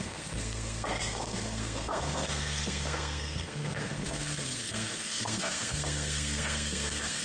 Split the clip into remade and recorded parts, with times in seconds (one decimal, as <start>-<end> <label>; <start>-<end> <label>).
0.0-7.2 remade